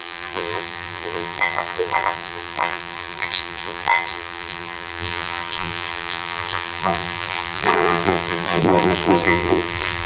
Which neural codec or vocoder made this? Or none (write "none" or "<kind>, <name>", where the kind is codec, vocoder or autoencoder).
vocoder, BigVGAN v2